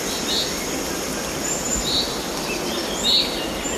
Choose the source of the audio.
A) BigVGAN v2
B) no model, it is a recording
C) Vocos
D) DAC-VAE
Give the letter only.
B